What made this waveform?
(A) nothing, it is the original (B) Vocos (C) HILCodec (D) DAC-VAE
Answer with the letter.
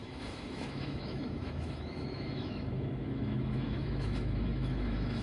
D